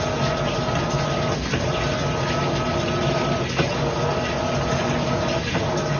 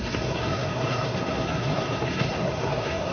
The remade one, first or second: second